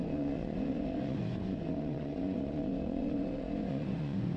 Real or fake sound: fake